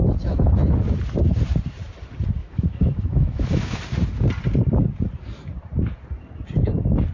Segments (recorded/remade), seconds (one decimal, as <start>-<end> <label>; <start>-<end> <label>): 0.0-2.4 recorded; 2.4-3.8 remade; 3.8-7.1 recorded